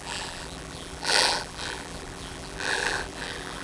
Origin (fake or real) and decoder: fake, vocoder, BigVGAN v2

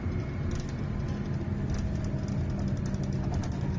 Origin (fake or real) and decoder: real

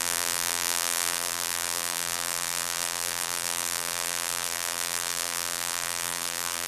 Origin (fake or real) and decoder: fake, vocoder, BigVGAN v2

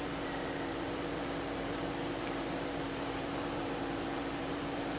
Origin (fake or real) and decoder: fake, vocoder, BigVGAN v2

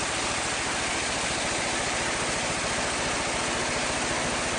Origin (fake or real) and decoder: real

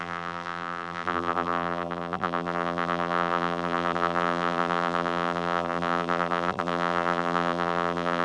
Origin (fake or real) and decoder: fake, vocoder, BigVGAN v2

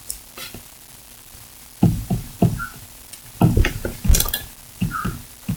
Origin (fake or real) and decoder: real